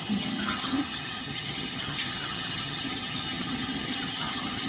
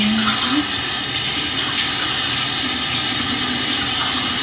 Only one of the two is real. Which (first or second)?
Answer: second